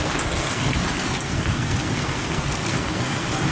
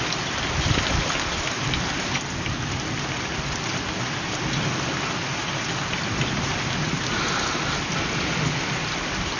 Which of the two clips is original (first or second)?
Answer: second